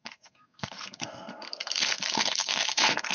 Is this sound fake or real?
fake